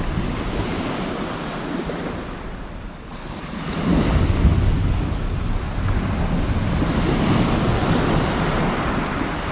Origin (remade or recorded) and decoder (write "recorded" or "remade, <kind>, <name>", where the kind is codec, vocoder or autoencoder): recorded